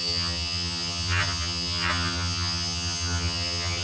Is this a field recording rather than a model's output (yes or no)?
no